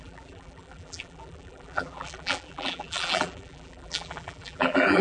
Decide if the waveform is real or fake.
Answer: fake